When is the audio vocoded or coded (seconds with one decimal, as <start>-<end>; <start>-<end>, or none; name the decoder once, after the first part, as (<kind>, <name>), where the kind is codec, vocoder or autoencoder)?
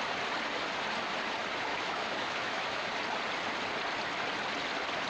1.7-2.9 (autoencoder, DAC-VAE)